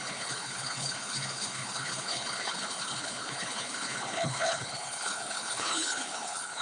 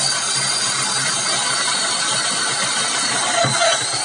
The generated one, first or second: first